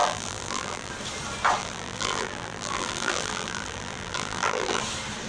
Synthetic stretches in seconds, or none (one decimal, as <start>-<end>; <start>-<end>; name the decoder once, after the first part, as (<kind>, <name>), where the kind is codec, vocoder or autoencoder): 0.0-0.9 (vocoder, BigVGAN v2); 1.6-4.8